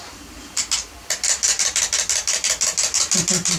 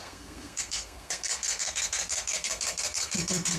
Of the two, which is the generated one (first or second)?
second